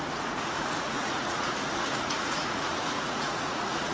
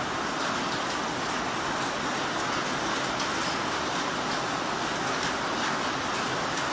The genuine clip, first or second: second